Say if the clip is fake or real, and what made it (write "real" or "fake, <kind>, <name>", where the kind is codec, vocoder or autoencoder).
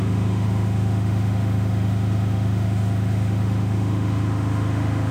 fake, autoencoder, DAC-VAE